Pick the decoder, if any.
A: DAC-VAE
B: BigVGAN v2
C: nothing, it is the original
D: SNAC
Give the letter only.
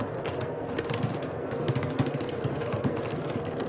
D